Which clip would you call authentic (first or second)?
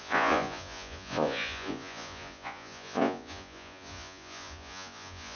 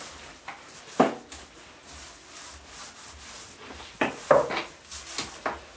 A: second